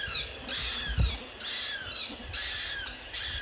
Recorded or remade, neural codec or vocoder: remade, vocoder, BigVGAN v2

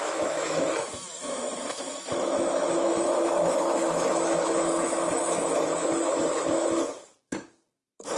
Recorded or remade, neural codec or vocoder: remade, autoencoder, DAC-VAE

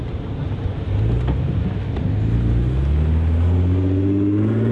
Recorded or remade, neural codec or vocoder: recorded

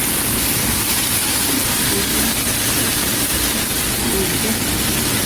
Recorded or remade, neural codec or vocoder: recorded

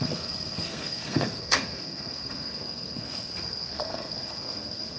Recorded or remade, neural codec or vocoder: remade, codec, SNAC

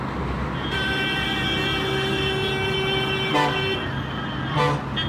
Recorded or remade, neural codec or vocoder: recorded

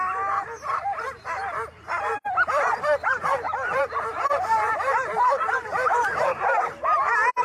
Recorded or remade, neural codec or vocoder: remade, vocoder, BigVGAN v2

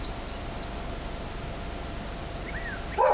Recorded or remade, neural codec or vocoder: recorded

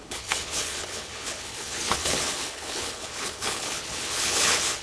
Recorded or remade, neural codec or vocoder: remade, codec, HILCodec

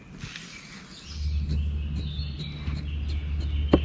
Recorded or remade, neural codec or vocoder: recorded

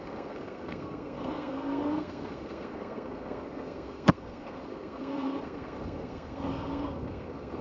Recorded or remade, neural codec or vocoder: remade, codec, SNAC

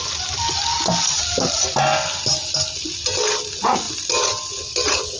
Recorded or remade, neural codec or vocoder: recorded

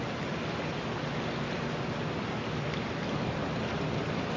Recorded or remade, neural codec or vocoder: recorded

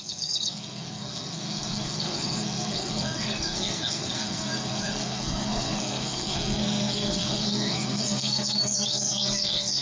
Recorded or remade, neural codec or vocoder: remade, codec, SNAC